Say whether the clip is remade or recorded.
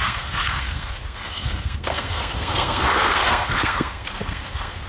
remade